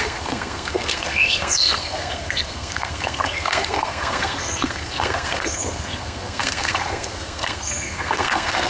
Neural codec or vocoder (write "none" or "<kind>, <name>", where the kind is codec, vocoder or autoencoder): codec, SNAC